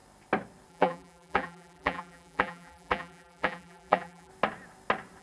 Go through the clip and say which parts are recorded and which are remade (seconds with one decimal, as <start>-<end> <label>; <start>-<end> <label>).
0.0-0.7 recorded; 0.7-4.3 remade; 4.3-5.2 recorded